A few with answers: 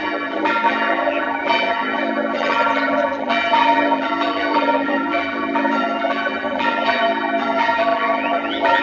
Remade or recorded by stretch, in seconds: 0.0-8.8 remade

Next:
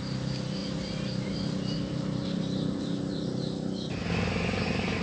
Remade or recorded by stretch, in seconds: 0.0-0.6 recorded; 0.6-3.4 remade; 3.4-5.0 recorded